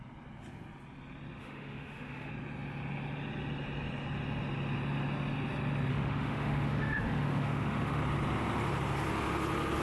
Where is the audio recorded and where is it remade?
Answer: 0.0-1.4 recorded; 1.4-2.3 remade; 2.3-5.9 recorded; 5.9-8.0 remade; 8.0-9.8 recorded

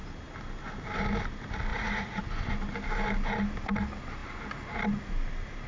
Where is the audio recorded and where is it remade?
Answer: 0.0-1.7 recorded; 1.7-2.2 remade; 2.2-5.7 recorded

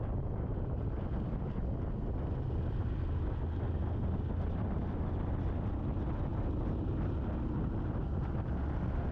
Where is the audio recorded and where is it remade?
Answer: 0.0-9.1 recorded

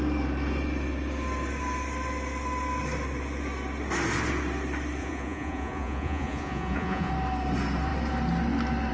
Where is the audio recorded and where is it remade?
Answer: 0.0-5.0 recorded; 5.0-7.1 remade; 7.1-8.9 recorded